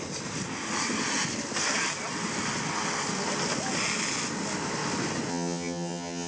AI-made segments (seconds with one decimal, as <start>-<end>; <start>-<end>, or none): 5.3-6.3